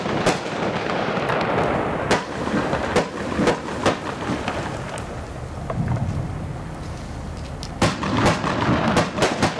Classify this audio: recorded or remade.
recorded